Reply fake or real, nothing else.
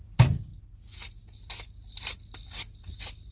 real